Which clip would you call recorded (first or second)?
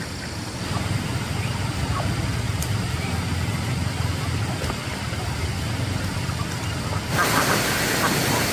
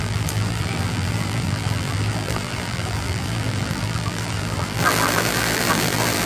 first